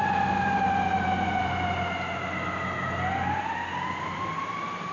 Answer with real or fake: real